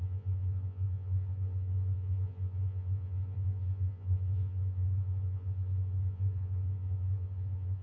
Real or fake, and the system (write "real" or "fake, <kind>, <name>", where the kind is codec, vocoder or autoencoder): fake, vocoder, Vocos